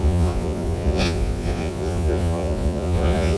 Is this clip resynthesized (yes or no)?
yes